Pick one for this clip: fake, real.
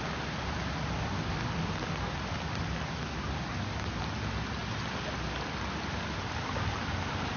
real